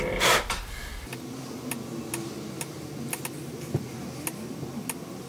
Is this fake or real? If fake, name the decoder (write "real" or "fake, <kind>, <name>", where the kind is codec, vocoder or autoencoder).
real